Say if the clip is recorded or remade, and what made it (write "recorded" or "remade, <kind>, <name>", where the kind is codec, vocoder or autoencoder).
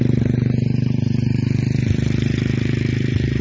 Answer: recorded